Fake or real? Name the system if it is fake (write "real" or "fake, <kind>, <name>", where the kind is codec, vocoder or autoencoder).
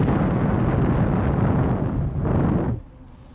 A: real